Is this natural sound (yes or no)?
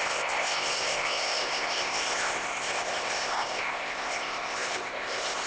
no